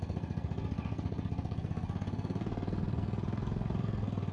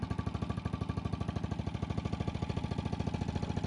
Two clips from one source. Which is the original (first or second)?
second